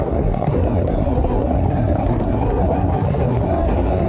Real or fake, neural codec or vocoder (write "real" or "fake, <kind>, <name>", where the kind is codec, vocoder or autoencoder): fake, codec, SNAC